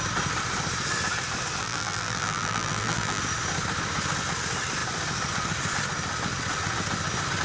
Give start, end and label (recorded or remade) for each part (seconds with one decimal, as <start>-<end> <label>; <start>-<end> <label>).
0.0-1.6 recorded; 1.6-3.2 remade; 3.2-7.4 recorded